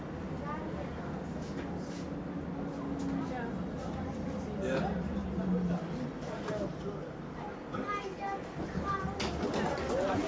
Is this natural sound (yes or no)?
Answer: yes